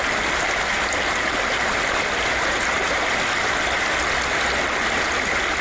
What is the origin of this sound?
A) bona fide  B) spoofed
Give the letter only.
A